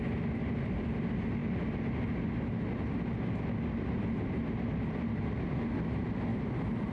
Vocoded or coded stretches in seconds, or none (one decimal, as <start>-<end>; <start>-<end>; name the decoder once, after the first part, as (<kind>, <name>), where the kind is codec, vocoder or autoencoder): 6.3-6.9 (vocoder, BigVGAN v2)